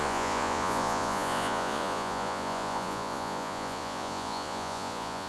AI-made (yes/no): yes